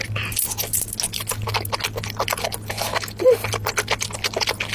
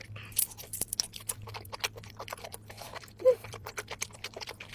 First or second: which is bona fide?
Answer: first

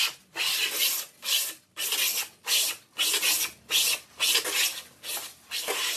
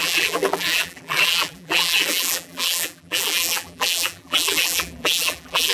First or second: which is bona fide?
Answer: first